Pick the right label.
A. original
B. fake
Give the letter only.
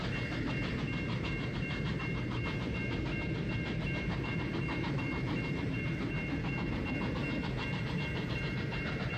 B